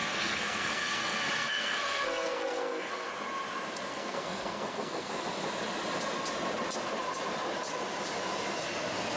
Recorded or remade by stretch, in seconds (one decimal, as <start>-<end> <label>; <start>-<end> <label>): 0.0-3.1 remade; 3.1-3.9 recorded; 3.9-5.1 remade; 5.1-9.2 recorded